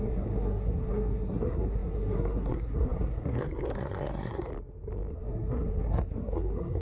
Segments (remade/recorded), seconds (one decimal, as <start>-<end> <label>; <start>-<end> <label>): 0.0-4.5 remade; 4.5-5.1 recorded; 5.1-6.8 remade

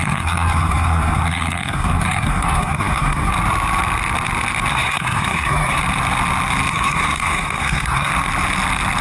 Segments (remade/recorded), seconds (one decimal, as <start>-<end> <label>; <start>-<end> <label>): 0.0-3.3 remade; 3.3-4.7 recorded; 4.7-5.8 remade; 5.8-6.7 recorded; 6.7-8.1 remade; 8.1-9.0 recorded

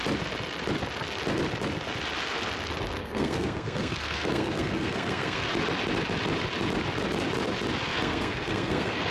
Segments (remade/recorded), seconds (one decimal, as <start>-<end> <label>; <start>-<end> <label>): 0.0-3.0 recorded; 3.0-5.5 remade; 5.5-7.9 recorded; 7.9-9.1 remade

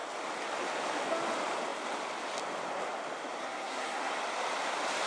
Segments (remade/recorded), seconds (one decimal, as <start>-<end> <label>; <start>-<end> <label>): 0.0-3.4 recorded; 3.4-4.1 remade; 4.1-5.1 recorded

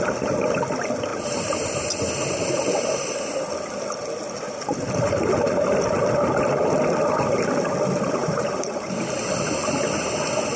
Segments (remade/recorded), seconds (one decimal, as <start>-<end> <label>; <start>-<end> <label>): 0.0-1.1 recorded; 1.1-3.1 remade; 3.1-8.2 recorded; 8.2-8.9 remade; 8.9-10.6 recorded

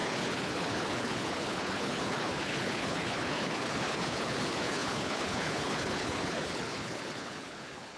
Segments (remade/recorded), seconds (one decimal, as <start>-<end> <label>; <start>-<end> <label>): 0.0-8.0 remade

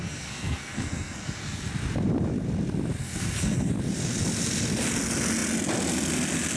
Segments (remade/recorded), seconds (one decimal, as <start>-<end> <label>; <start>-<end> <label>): 0.0-1.7 remade; 1.7-3.0 recorded; 3.0-3.7 remade; 3.7-6.6 recorded

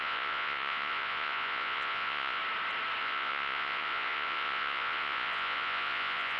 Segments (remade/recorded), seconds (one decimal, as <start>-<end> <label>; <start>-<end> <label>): 0.0-2.4 remade; 2.4-3.0 recorded; 3.0-6.4 remade